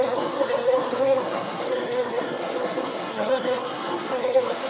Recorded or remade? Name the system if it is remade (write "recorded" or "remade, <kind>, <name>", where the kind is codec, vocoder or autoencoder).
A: remade, codec, SNAC